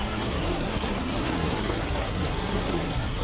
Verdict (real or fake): fake